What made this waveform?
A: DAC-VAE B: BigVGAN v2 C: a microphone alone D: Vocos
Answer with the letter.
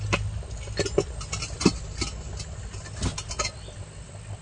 C